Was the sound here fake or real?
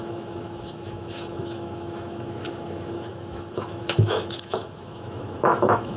fake